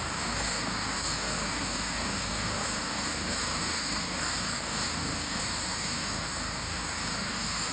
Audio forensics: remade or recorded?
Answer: remade